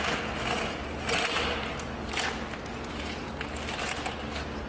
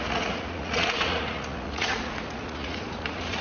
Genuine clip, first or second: first